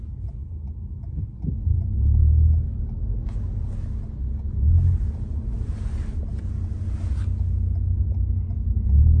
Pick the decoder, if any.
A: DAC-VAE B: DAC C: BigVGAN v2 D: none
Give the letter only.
D